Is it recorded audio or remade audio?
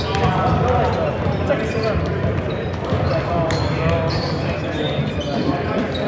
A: recorded